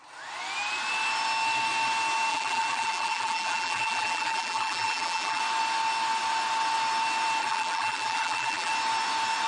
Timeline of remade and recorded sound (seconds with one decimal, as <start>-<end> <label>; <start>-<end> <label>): 0.0-2.3 recorded; 2.3-5.4 remade; 5.4-7.4 recorded; 7.4-8.7 remade; 8.7-9.5 recorded